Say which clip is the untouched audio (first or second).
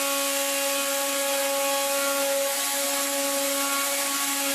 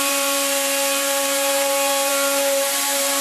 first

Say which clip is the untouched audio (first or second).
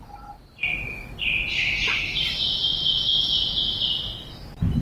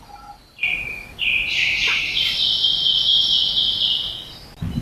first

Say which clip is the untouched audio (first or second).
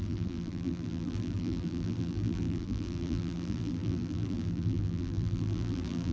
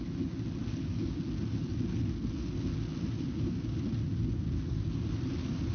second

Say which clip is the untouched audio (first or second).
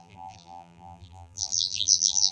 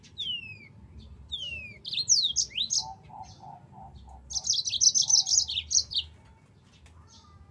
second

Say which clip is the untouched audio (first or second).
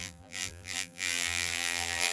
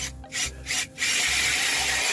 second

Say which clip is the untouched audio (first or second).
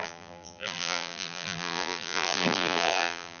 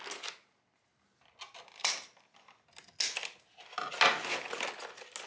second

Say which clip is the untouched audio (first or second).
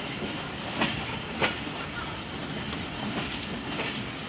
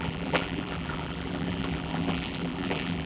first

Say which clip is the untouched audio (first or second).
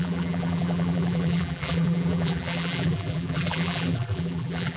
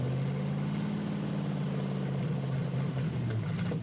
second